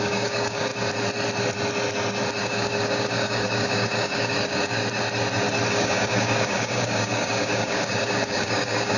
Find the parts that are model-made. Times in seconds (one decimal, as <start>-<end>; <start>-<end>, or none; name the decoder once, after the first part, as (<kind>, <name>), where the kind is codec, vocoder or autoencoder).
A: 0.0-0.7 (codec, DAC); 2.4-4.8; 5.7-9.0